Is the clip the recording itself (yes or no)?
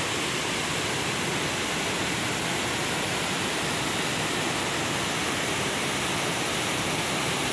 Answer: yes